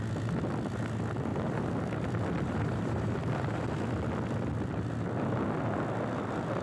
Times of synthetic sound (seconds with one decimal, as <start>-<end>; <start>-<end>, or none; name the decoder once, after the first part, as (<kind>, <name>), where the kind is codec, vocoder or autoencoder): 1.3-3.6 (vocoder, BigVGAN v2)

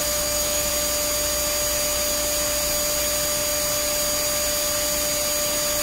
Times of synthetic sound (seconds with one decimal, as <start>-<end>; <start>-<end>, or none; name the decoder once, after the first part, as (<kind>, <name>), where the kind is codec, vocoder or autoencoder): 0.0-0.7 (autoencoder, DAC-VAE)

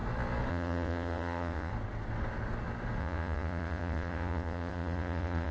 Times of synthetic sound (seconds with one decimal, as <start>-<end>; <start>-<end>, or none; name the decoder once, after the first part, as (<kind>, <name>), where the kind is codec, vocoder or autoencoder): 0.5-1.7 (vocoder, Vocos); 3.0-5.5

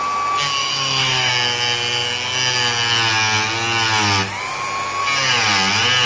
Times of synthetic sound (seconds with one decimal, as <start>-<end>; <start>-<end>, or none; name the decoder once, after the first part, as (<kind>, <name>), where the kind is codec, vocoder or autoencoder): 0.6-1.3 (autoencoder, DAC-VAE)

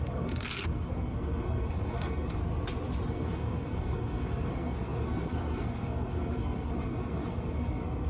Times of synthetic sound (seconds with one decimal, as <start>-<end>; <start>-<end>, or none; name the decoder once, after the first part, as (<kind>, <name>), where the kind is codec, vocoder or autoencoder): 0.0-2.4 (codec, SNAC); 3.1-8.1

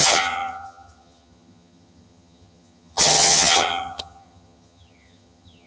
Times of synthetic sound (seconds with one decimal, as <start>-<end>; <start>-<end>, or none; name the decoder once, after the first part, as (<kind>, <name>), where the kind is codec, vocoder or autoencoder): 0.0-5.7 (vocoder, HiFi-GAN)

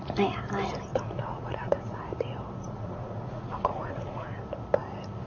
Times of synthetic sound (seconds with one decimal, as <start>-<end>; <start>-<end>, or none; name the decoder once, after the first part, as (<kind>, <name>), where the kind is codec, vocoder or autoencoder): 0.9-2.0 (vocoder, Vocos); 2.6-4.4